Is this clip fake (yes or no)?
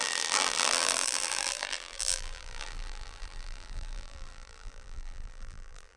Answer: yes